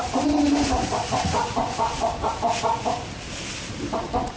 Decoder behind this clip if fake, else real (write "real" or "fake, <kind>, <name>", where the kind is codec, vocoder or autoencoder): fake, vocoder, BigVGAN v2